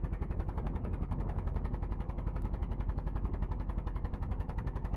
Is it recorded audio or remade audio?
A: remade